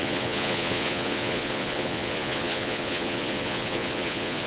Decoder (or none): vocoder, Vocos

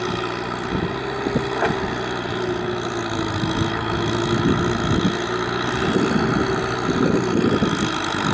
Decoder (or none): none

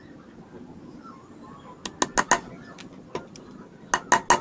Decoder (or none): none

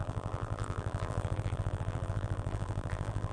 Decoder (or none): vocoder, BigVGAN v2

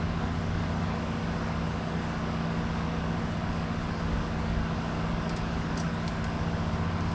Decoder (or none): codec, DAC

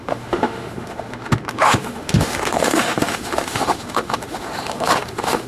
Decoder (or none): autoencoder, DAC-VAE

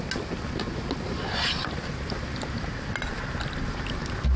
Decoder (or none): none